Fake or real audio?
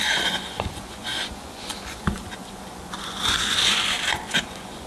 fake